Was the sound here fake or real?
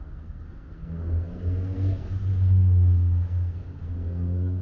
fake